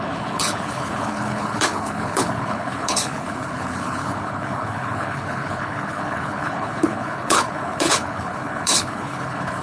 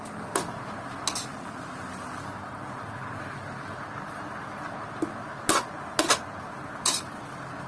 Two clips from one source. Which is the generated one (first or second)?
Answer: first